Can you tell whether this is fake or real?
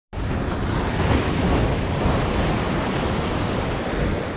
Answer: real